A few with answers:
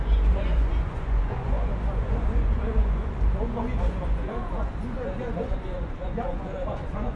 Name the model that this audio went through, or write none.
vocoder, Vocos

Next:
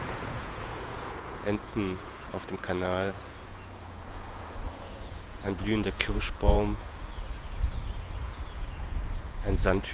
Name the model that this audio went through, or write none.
vocoder, Vocos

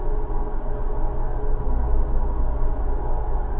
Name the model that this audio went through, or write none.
none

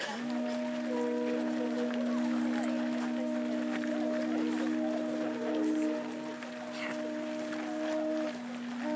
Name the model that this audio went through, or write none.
none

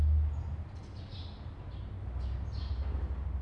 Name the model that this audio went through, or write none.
none